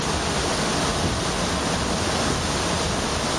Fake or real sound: real